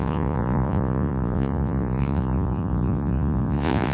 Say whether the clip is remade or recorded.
remade